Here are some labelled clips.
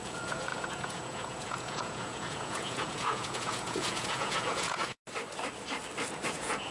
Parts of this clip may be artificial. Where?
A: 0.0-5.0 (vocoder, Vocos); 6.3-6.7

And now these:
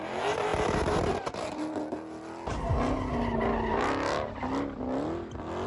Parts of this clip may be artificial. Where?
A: none

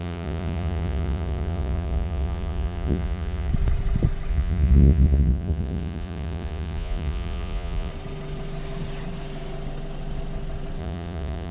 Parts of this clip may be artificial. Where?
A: 0.0-3.5 (vocoder, Vocos); 4.3-7.9; 10.8-11.5

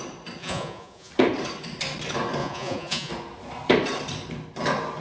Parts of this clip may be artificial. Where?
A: 0.4-1.1 (vocoder, Vocos); 2.4-3.1

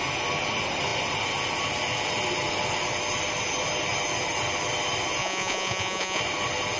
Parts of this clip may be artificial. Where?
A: 5.2-6.2 (vocoder, Vocos)